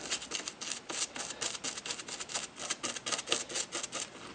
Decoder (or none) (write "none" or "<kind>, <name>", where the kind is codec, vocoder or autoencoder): none